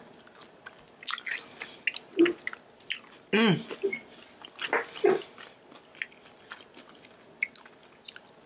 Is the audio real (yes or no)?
yes